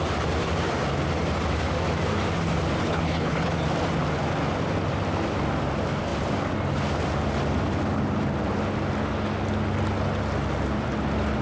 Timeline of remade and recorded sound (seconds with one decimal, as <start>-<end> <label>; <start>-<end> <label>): 0.0-2.8 recorded; 2.8-3.5 remade; 3.5-11.4 recorded